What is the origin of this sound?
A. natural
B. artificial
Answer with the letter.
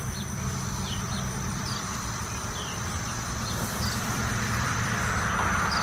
B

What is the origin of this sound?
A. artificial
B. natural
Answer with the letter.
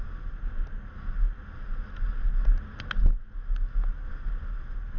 B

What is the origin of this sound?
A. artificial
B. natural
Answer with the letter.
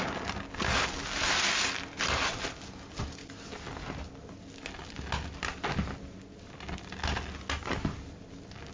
B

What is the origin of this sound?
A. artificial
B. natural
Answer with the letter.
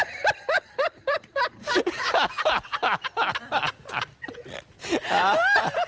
B